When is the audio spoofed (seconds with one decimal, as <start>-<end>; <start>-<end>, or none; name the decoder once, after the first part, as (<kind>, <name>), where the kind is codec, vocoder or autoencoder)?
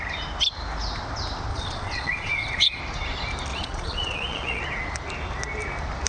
1.5-2.8 (vocoder, Vocos); 3.5-4.6